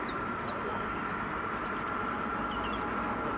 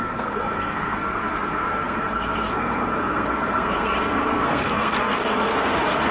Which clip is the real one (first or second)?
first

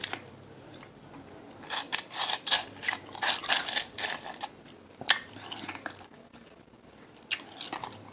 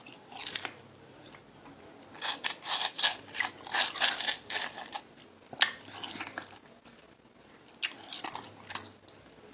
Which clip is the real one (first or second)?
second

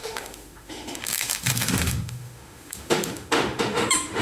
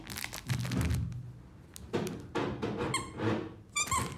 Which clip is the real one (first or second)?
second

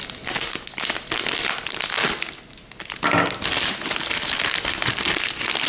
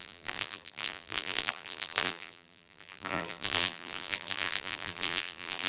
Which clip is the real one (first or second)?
first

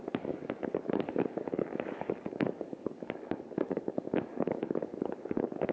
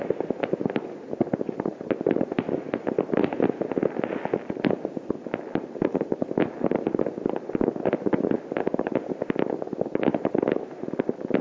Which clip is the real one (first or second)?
second